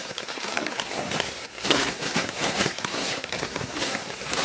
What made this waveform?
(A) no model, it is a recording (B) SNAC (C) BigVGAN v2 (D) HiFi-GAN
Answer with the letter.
B